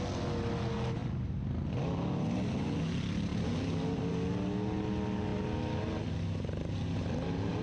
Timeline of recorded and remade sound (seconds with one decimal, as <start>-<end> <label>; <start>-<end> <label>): 0.0-7.6 recorded